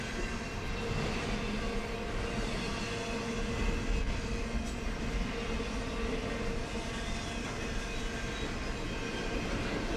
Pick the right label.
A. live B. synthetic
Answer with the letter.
A